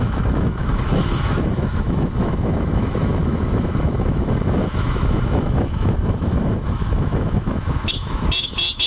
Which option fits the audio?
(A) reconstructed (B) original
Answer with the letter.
A